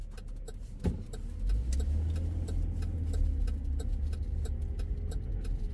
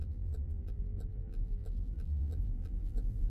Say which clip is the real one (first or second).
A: first